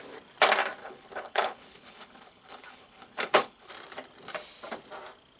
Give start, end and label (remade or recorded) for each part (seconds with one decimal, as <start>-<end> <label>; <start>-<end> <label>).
0.0-0.8 recorded; 0.8-3.7 remade; 3.7-5.4 recorded